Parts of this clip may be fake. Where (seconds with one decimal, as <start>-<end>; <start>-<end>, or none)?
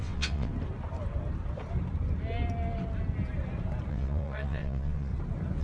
0.0-0.5; 3.9-5.1